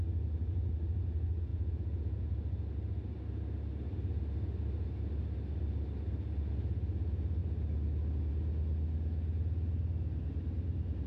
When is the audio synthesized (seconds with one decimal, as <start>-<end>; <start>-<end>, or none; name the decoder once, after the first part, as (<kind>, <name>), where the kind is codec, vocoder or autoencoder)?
1.5-2.4 (vocoder, Vocos)